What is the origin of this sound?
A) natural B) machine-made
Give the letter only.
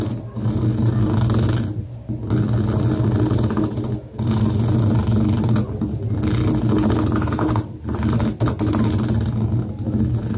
A